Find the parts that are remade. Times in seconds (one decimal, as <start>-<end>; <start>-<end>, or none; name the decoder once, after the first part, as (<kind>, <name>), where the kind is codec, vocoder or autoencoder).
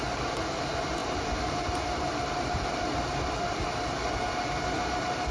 1.0-3.4 (vocoder, BigVGAN v2)